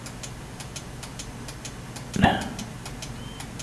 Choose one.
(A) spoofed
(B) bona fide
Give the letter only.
B